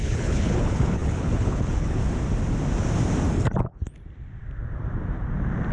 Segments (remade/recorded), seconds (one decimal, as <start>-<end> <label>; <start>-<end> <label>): 0.0-2.0 remade; 2.0-5.7 recorded